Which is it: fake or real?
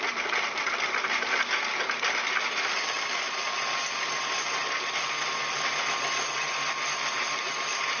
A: real